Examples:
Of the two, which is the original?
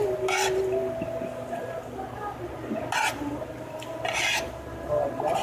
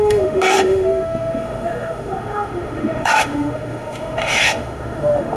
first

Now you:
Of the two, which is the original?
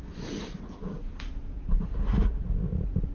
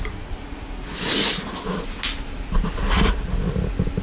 second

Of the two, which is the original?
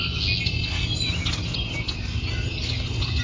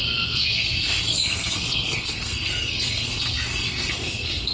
first